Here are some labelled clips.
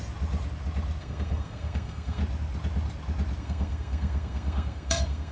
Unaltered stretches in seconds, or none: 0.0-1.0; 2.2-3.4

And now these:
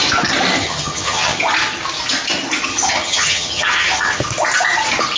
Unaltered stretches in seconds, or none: 0.0-0.6; 1.4-2.7; 4.2-5.2

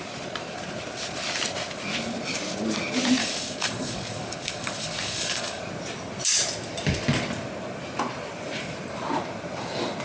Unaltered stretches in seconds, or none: 0.0-3.2; 5.6-10.0

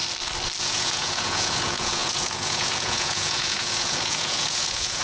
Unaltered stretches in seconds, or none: 0.0-0.6

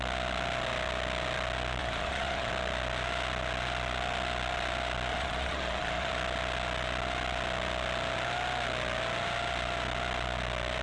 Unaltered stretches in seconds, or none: 0.0-1.8; 2.5-5.1; 6.1-10.8

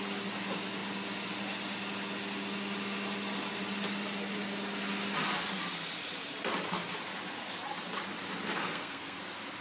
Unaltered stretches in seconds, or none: 0.0-8.6; 9.2-9.6

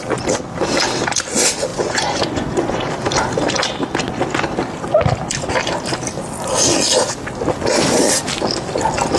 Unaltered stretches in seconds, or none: 0.0-1.7; 2.9-9.2